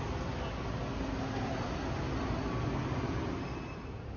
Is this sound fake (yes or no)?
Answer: no